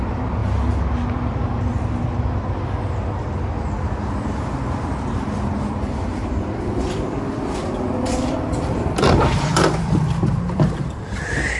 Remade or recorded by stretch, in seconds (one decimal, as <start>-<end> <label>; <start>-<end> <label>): 0.0-0.4 remade; 0.4-4.0 recorded; 4.0-11.6 remade